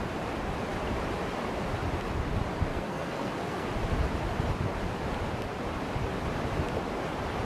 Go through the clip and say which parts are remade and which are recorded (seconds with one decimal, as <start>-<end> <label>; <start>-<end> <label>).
0.0-2.7 recorded; 2.7-3.7 remade; 3.7-7.4 recorded